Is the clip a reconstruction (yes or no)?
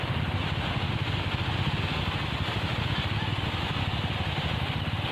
no